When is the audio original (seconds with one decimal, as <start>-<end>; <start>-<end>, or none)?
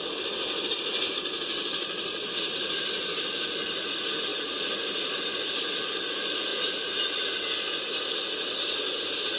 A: 0.0-9.4